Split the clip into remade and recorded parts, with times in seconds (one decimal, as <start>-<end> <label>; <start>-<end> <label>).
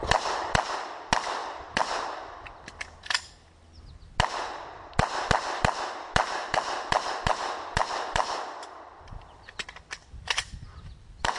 0.0-1.4 recorded; 1.4-2.8 remade; 2.8-6.4 recorded; 6.4-11.4 remade